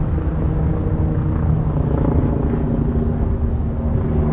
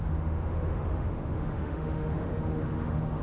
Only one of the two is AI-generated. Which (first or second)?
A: second